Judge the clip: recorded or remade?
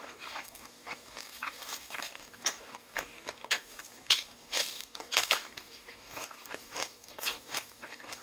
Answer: remade